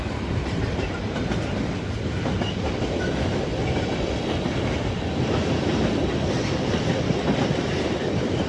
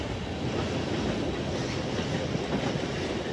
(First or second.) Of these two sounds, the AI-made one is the first